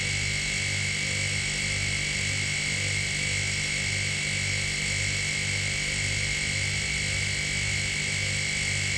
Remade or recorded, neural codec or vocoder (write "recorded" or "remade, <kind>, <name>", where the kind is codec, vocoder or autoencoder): recorded